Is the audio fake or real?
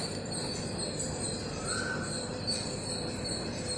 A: real